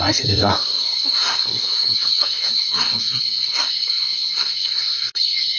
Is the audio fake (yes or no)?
yes